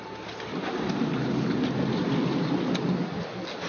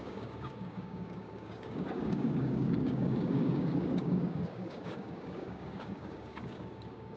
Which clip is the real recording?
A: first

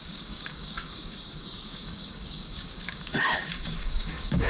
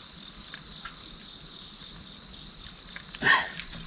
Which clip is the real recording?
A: second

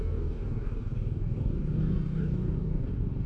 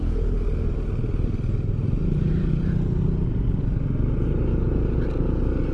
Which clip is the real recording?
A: second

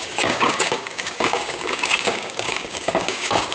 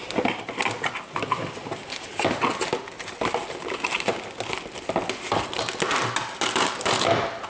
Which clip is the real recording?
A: second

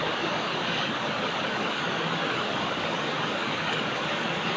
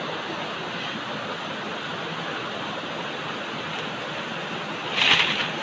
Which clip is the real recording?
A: second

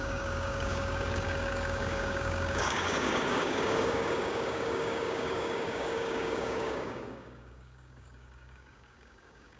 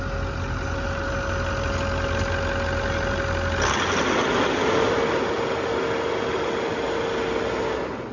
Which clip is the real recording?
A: second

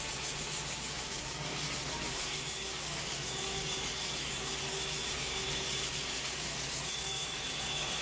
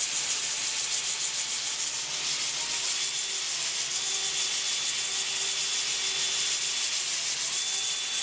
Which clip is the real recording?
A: second